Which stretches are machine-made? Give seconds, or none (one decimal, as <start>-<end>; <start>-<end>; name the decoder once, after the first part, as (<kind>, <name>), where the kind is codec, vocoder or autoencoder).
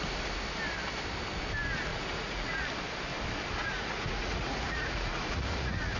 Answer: 1.9-2.6 (vocoder, Vocos); 3.6-6.0